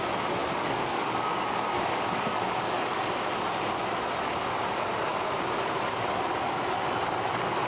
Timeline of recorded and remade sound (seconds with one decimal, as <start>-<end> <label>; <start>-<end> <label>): 0.0-0.4 recorded; 0.4-3.0 remade; 3.0-7.7 recorded